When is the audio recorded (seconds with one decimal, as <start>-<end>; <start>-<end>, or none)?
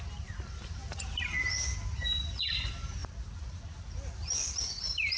0.0-5.2